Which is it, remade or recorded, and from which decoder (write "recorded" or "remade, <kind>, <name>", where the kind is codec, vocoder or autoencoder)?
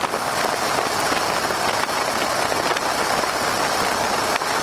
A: recorded